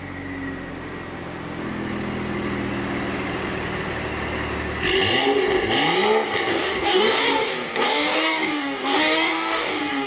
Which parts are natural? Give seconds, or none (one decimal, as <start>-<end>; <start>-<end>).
0.0-6.5